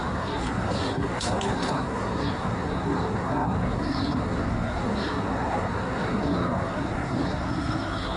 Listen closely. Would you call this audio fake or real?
fake